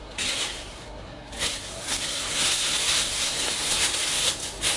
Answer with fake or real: fake